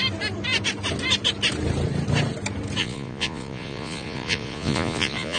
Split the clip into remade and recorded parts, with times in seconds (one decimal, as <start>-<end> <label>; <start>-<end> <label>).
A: 0.0-2.8 recorded; 2.8-5.4 remade